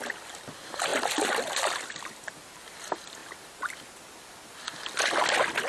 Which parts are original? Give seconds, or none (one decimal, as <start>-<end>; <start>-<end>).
0.0-0.9; 2.3-5.7